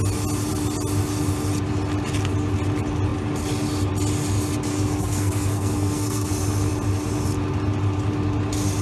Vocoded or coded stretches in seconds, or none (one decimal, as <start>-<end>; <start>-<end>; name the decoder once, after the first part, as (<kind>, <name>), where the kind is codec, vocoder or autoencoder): 4.7-6.3 (codec, SNAC)